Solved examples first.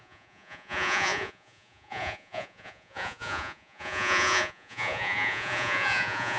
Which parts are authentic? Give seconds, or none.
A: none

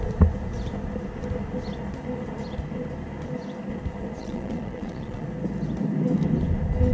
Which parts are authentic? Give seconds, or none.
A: 0.0-4.2; 5.3-6.9

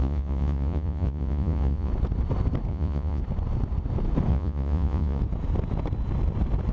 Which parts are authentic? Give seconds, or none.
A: 1.9-2.7; 3.2-4.3; 5.2-6.7

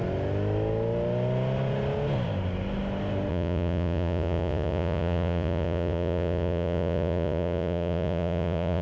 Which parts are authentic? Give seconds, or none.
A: 0.0-3.3

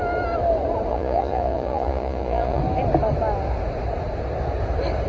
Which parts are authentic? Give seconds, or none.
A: 0.0-0.9; 2.6-5.1

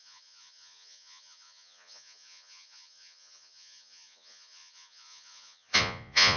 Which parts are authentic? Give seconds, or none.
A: none